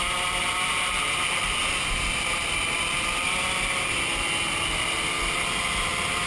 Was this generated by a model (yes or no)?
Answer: no